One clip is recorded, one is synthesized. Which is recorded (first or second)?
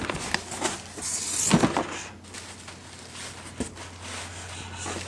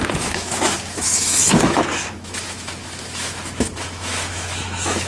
first